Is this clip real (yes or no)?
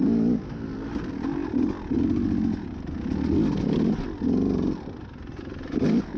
yes